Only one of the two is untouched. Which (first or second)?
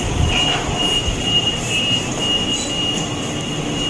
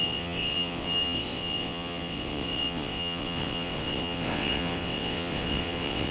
first